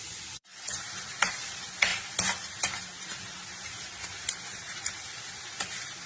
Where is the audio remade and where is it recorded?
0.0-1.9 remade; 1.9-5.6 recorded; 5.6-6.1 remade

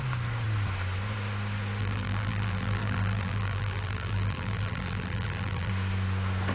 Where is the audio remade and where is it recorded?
0.0-1.8 recorded; 1.8-5.7 remade; 5.7-6.5 recorded

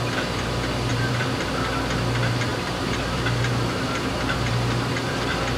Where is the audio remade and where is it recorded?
0.0-0.9 recorded; 0.9-1.5 remade; 1.5-2.5 recorded; 2.5-4.5 remade; 4.5-5.6 recorded